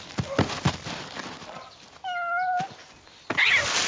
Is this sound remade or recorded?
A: recorded